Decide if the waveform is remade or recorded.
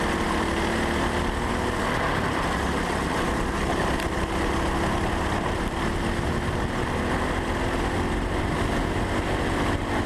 recorded